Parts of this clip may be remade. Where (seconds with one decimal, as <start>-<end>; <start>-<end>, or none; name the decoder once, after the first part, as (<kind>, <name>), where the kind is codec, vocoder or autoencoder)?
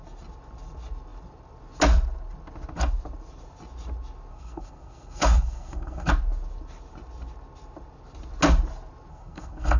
4.3-6.1 (codec, SNAC); 9.1-9.8